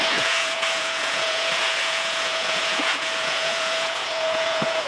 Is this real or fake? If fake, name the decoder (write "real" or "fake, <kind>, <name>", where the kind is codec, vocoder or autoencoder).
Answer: fake, vocoder, Vocos